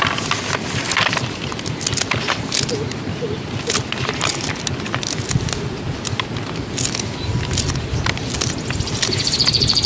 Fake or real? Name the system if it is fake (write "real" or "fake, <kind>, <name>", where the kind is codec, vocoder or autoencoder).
real